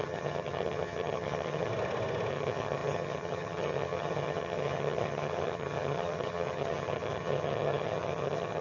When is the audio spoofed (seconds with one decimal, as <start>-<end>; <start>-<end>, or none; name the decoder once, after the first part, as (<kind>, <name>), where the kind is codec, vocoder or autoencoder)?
0.0-1.7 (vocoder, HiFi-GAN); 2.3-8.6